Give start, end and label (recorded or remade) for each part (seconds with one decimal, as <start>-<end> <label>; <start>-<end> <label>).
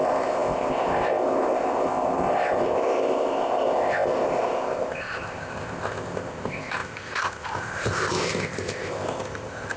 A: 0.0-9.8 remade